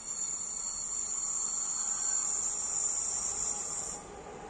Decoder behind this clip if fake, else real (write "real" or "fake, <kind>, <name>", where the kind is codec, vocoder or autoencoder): real